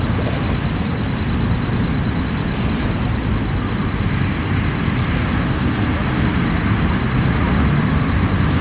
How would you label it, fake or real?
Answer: real